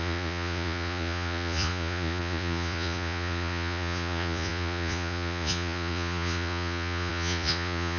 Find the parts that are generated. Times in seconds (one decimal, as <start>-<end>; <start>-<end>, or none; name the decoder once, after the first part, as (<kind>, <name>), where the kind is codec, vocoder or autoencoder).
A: 0.0-8.0 (vocoder, Vocos)